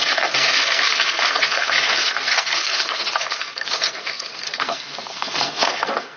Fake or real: fake